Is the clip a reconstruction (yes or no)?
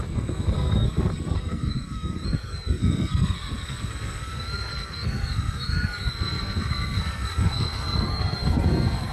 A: yes